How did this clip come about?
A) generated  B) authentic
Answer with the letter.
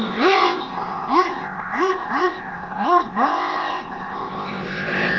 A